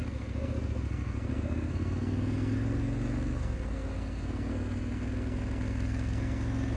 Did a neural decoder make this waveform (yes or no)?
yes